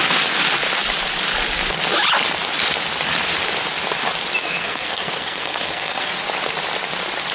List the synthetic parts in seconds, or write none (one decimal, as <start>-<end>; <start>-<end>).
4.4-6.1